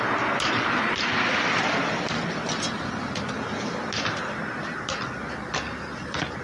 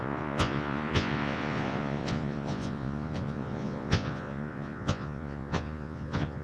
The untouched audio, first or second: first